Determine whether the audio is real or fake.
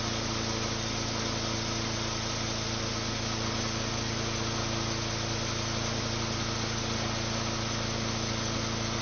real